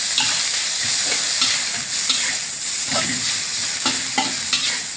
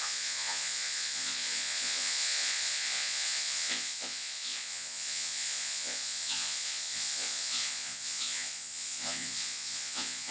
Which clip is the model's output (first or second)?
second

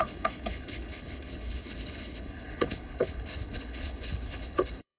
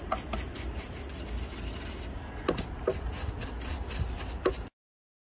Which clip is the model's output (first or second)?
first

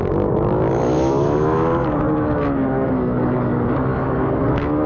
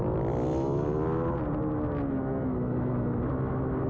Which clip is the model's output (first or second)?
first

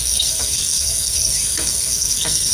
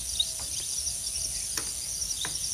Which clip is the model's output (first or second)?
first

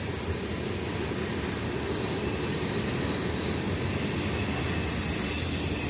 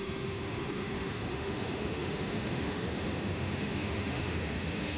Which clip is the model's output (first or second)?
second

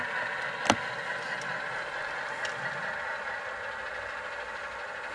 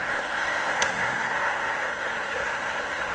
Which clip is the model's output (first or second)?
second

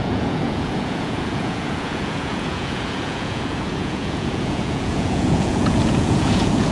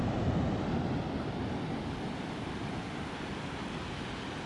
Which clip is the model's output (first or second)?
first